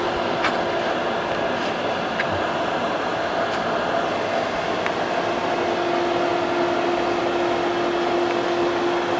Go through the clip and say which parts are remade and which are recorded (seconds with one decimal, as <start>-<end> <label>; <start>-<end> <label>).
0.0-9.2 recorded